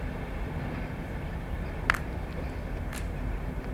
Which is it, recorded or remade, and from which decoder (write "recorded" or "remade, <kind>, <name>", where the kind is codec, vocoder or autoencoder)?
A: recorded